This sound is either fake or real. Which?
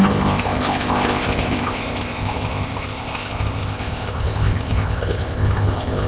fake